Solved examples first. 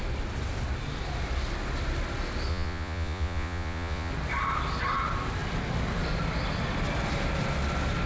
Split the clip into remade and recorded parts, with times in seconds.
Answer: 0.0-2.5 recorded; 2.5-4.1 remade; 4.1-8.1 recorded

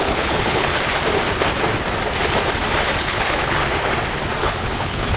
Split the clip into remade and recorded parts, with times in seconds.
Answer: 0.0-0.7 remade; 0.7-3.0 recorded; 3.0-3.6 remade; 3.6-4.4 recorded; 4.4-5.2 remade

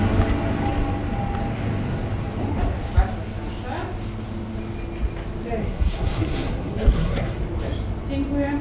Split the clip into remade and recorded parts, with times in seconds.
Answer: 0.0-5.6 recorded; 5.6-7.4 remade; 7.4-8.6 recorded

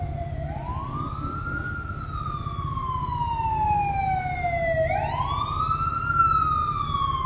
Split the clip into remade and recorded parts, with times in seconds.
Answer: 0.0-7.3 recorded

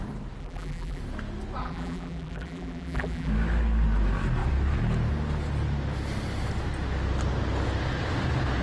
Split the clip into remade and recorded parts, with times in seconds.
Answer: 0.0-0.4 recorded; 0.4-1.0 remade; 1.0-1.6 recorded; 1.6-3.3 remade; 3.3-8.6 recorded

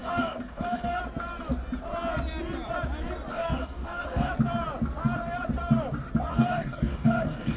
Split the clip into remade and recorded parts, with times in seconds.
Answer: 0.0-1.0 remade; 1.0-3.3 recorded; 3.3-4.3 remade; 4.3-6.3 recorded; 6.3-7.6 remade

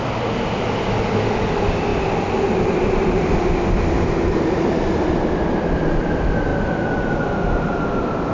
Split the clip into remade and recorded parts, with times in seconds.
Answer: 0.0-8.3 recorded

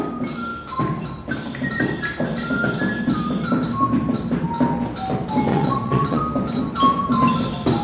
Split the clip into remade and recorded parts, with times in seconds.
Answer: 0.0-5.5 recorded; 5.5-6.2 remade; 6.2-7.8 recorded